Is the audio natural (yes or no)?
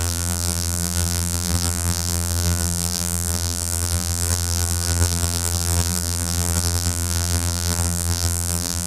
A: no